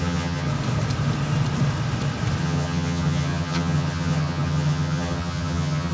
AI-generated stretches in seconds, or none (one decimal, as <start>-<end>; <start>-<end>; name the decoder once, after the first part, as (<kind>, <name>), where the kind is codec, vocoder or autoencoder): 0.0-0.5 (vocoder, HiFi-GAN); 2.4-5.9